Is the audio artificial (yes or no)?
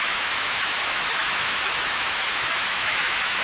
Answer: yes